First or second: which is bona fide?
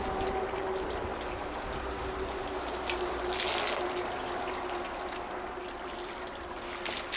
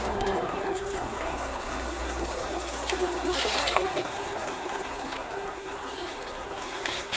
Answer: first